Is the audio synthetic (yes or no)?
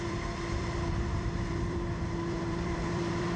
yes